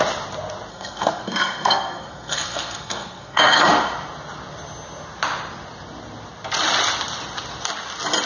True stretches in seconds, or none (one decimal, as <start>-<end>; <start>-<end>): 0.0-0.7; 3.6-8.3